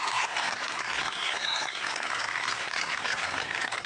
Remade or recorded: remade